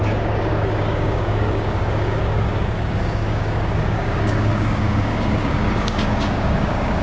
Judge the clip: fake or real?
fake